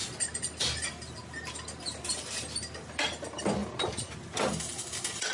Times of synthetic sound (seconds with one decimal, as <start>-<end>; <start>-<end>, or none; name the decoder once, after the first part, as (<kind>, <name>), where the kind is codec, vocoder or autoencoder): none